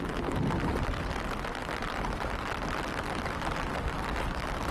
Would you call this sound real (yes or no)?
yes